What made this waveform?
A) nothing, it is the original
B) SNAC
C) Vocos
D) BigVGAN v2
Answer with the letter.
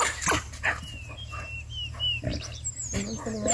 A